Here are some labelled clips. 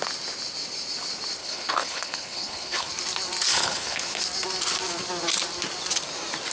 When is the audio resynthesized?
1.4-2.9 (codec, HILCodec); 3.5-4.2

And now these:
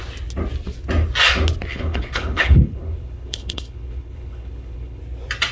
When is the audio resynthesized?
1.7-5.0 (codec, HILCodec)